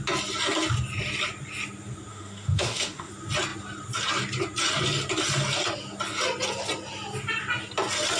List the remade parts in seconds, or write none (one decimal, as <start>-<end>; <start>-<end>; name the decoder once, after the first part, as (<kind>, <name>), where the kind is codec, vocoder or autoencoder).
2.1-3.1 (autoencoder, DAC-VAE)